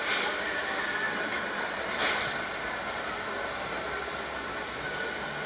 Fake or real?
real